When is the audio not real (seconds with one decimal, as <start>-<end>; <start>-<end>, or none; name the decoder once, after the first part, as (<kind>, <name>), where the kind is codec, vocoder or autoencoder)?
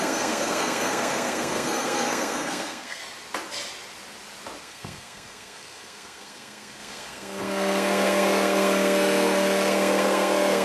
0.0-3.0 (codec, SNAC); 4.6-10.6